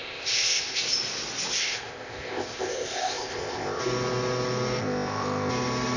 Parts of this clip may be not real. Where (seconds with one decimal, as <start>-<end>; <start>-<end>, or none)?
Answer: 0.0-0.8; 1.6-3.8; 4.8-5.5